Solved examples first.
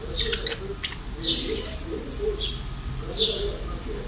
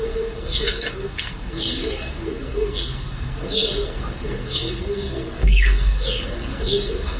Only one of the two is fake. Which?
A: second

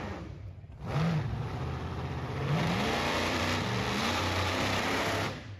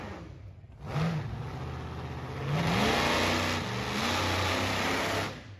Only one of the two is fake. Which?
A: first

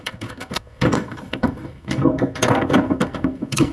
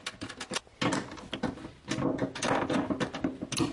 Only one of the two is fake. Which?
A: first